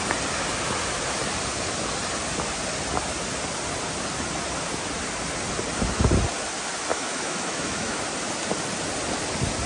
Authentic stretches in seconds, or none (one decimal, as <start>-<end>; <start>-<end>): 0.0-6.9; 8.0-9.7